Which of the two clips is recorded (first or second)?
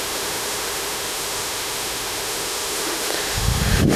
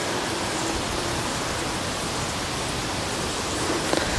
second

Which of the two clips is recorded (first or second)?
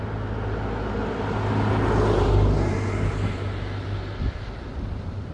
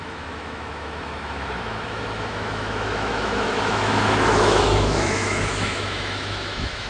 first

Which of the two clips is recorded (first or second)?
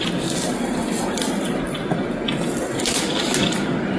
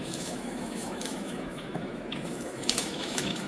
first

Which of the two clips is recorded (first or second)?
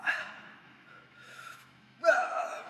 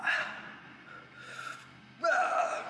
second